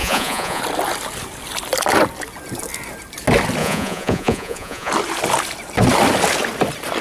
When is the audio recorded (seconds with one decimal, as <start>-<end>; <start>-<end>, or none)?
0.6-3.6; 4.9-7.0